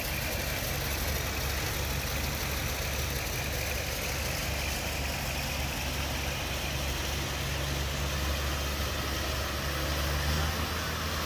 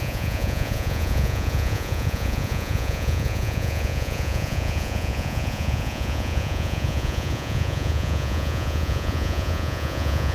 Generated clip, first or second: second